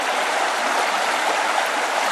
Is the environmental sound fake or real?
real